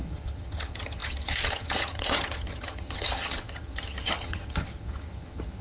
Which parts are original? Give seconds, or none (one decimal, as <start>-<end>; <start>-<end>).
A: none